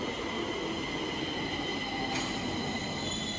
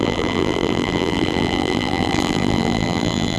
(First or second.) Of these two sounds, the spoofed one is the second